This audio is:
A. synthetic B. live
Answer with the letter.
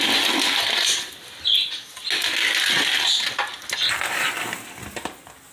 B